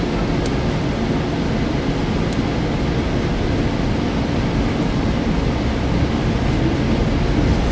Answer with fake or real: real